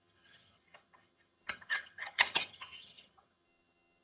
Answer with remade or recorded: remade